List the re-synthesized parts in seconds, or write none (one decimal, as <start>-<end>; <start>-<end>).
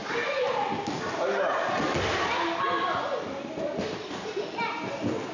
none